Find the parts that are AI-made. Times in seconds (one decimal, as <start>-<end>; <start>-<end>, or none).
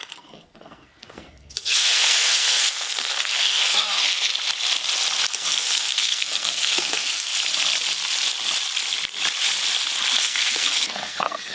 0.0-4.3; 5.3-7.3; 10.2-11.5